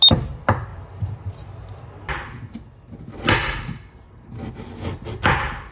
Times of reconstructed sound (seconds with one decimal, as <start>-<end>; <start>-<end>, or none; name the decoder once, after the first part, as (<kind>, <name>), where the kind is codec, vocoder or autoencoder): none